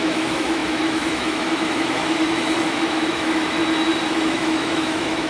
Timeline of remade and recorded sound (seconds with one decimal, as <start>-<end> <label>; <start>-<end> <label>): 0.0-3.6 remade; 3.6-4.1 recorded; 4.1-5.3 remade